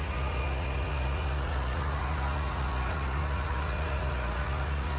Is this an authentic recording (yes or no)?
no